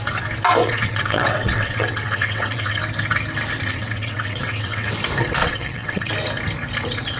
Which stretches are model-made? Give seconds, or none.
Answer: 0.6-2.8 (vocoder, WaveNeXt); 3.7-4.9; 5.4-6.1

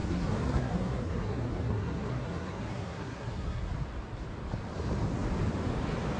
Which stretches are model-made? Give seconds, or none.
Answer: 0.0-3.7 (codec, SNAC)

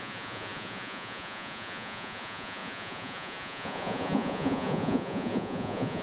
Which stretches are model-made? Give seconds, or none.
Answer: 0.0-6.0 (vocoder, Vocos)

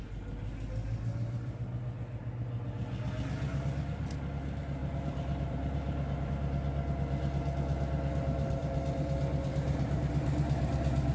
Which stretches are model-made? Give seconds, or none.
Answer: 4.8-6.3 (vocoder, BigVGAN v2); 8.6-10.7

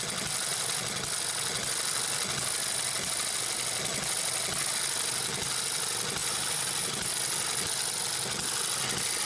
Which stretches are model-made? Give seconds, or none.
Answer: 6.2-7.1 (vocoder, BigVGAN v2)

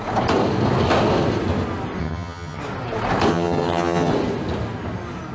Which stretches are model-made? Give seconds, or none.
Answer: 2.0-2.6 (vocoder, HiFi-GAN); 3.3-4.1

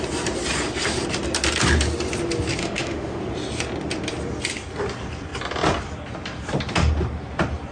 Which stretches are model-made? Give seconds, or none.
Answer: 2.6-3.2 (autoencoder, DAC-VAE)

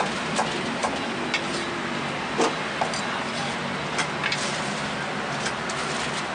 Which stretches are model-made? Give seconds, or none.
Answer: none